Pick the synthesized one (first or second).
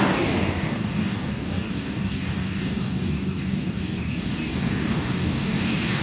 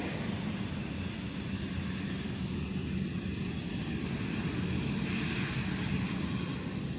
first